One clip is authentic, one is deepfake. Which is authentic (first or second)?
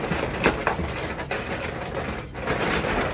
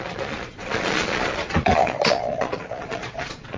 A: first